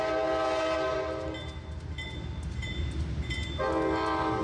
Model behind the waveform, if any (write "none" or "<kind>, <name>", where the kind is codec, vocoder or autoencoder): none